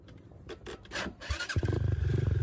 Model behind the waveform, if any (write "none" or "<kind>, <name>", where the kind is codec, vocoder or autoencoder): vocoder, BigVGAN v2